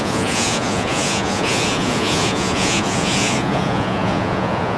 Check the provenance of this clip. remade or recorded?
remade